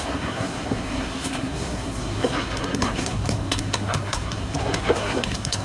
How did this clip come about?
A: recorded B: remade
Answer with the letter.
B